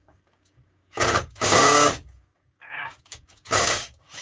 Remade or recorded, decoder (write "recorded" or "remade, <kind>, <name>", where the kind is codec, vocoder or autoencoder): remade, codec, DAC